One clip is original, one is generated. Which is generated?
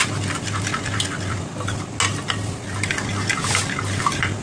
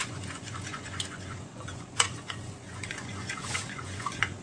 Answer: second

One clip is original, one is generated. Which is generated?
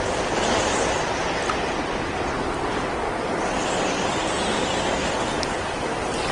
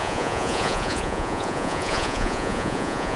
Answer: second